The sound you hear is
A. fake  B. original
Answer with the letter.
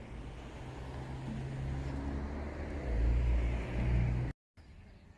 B